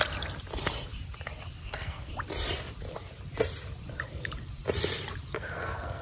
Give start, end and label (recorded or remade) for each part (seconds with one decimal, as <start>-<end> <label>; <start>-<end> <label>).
0.0-1.6 recorded; 1.6-2.1 remade; 2.1-5.3 recorded; 5.3-6.0 remade

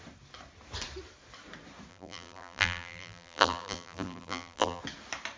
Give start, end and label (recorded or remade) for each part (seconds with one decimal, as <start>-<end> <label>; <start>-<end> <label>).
0.0-1.9 recorded; 1.9-4.8 remade; 4.8-5.4 recorded

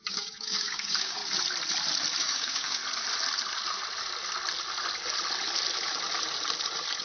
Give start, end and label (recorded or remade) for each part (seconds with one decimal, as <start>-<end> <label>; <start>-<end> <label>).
0.0-1.2 remade; 1.2-2.2 recorded; 2.2-2.8 remade; 2.8-7.0 recorded

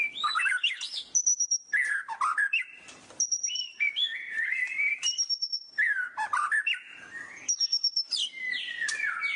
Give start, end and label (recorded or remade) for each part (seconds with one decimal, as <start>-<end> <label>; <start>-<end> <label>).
0.0-1.3 remade; 1.3-1.9 recorded; 1.9-9.4 remade

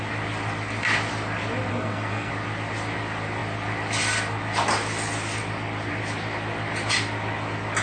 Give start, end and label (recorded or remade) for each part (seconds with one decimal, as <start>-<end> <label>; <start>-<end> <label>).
0.0-1.7 recorded; 1.7-2.3 remade; 2.3-7.8 recorded

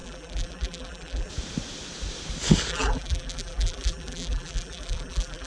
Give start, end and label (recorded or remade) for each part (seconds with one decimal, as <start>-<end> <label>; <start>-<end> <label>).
0.0-1.3 remade; 1.3-2.7 recorded; 2.7-5.5 remade

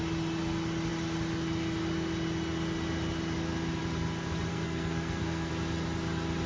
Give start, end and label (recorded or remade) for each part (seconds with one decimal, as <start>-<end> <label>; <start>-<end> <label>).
0.0-4.5 recorded; 4.5-5.5 remade; 5.5-6.5 recorded